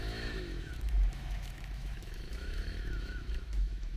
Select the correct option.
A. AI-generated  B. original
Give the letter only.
A